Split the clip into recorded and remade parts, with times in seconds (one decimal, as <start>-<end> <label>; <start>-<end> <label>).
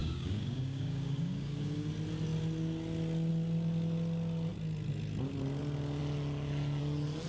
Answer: 0.0-1.9 remade; 1.9-7.3 recorded